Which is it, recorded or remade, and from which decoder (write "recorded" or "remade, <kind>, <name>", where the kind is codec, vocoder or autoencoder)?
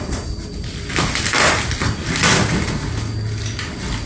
recorded